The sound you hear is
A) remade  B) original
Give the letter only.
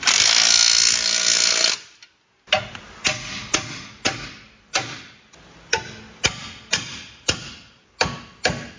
B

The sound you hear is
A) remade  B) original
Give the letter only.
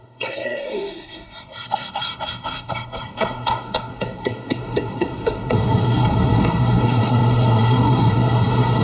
A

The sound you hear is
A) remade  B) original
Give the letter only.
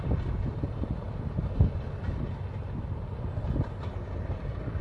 B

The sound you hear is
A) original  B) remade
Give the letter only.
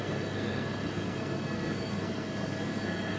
B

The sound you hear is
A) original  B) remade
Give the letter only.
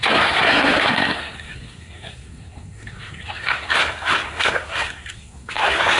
B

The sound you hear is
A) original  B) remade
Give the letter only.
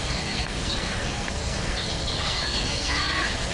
B